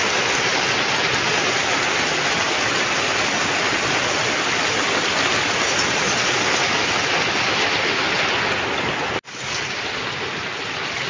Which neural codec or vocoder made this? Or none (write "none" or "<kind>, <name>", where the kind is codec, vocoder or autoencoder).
none